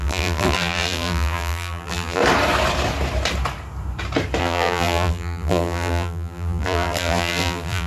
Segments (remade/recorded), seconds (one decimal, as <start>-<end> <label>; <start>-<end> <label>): 0.0-2.2 remade; 2.2-4.4 recorded; 4.4-7.9 remade